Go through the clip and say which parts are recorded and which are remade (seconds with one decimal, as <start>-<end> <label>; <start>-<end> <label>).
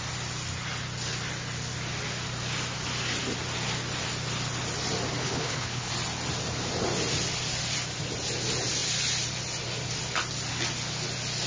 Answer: 0.0-5.2 recorded; 5.2-5.9 remade; 5.9-11.5 recorded